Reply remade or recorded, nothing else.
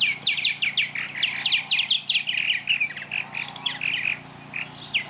recorded